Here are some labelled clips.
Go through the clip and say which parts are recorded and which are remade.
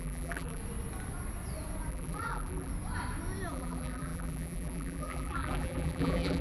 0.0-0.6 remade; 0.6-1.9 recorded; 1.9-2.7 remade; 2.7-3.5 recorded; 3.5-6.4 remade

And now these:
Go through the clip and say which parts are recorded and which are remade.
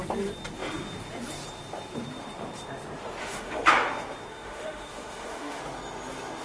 0.0-3.2 recorded; 3.2-3.7 remade; 3.7-4.3 recorded; 4.3-5.6 remade; 5.6-6.4 recorded